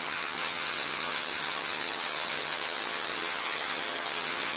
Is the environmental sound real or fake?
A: fake